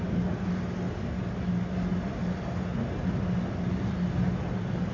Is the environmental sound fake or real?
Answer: real